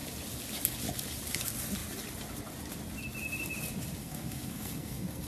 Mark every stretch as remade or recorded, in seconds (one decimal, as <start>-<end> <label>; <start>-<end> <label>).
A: 0.0-4.0 recorded; 4.0-5.3 remade